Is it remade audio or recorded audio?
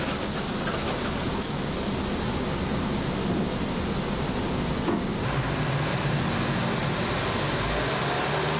recorded